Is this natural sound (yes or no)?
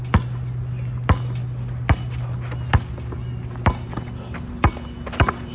yes